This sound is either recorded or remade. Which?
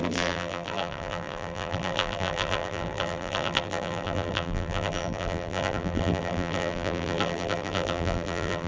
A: remade